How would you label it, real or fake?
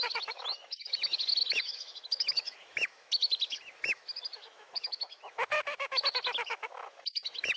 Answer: fake